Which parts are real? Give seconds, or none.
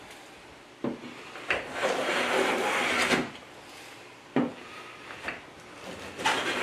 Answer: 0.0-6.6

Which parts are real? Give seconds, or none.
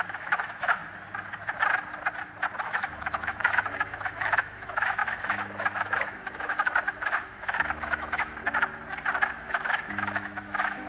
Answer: 0.8-2.6; 8.4-9.3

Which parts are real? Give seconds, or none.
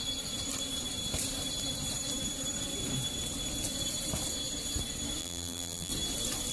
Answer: 0.0-5.2; 5.9-6.5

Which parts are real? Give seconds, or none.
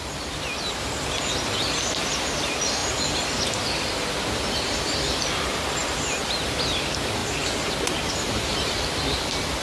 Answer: 0.0-9.6